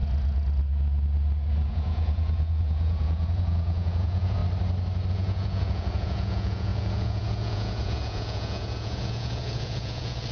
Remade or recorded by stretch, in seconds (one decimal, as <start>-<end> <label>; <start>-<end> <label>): 0.0-1.7 recorded; 1.7-4.4 remade; 4.4-5.1 recorded; 5.1-10.3 remade